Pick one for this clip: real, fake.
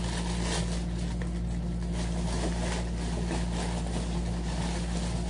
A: real